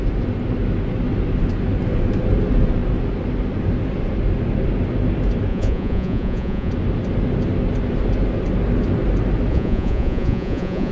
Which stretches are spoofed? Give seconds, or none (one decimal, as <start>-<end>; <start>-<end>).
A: 5.5-6.7; 9.5-10.9